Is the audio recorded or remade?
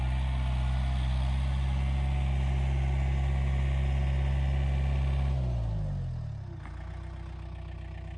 recorded